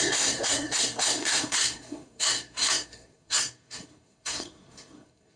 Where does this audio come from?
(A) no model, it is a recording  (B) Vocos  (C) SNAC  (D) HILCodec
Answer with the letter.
C